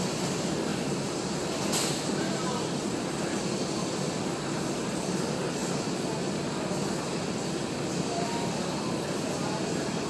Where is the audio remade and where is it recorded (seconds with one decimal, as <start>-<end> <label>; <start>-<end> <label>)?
0.0-10.1 recorded